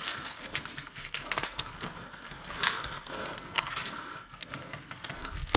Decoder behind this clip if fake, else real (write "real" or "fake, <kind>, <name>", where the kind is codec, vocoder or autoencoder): fake, codec, SNAC